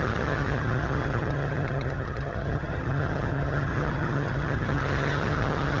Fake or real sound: fake